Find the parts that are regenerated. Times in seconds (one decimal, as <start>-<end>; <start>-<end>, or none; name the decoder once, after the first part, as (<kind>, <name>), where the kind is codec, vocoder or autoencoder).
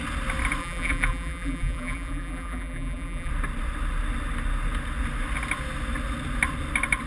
0.6-3.3 (vocoder, BigVGAN v2)